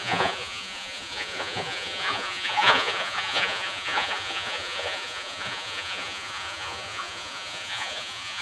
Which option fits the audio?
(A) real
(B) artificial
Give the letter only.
B